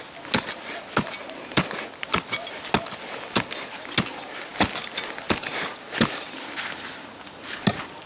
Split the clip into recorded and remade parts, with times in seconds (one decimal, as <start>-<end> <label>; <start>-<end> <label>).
0.0-1.2 recorded; 1.2-1.8 remade; 1.8-8.1 recorded